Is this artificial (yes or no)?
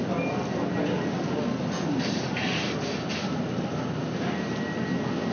no